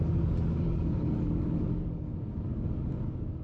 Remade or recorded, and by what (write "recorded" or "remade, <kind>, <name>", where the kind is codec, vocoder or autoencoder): remade, codec, DAC